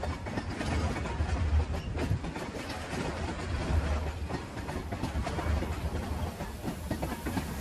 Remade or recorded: recorded